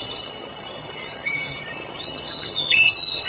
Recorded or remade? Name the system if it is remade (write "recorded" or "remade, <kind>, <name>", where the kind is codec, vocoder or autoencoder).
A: remade, vocoder, HiFi-GAN